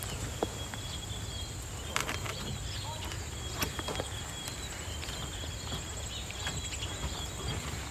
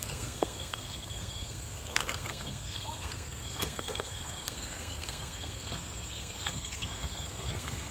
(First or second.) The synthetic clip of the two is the second